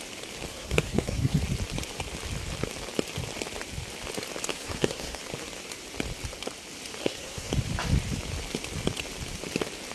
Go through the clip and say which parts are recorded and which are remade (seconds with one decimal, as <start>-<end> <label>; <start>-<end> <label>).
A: 0.0-0.5 recorded; 0.5-1.4 remade; 1.4-4.5 recorded; 4.5-5.2 remade; 5.2-7.0 recorded; 7.0-7.5 remade; 7.5-9.9 recorded